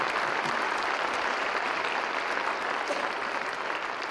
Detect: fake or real real